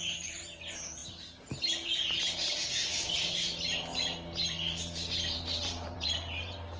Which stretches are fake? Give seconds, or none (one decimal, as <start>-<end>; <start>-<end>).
0.0-6.8